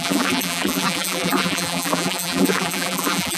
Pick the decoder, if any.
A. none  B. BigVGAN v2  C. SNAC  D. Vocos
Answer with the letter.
B